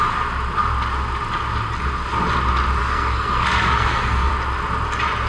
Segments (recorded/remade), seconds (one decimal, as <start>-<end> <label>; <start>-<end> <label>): 0.0-2.8 recorded; 2.8-4.3 remade; 4.3-5.3 recorded